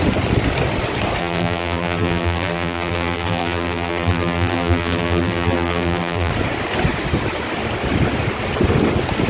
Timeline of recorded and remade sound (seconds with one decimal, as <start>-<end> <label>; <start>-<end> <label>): 0.0-1.2 recorded; 1.2-6.3 remade; 6.3-9.3 recorded